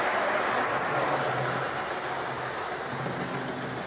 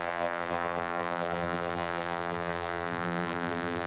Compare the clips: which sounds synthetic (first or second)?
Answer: second